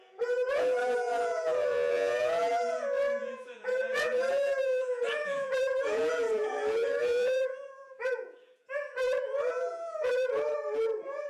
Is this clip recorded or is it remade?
remade